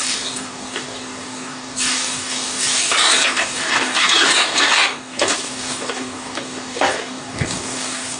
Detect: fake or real fake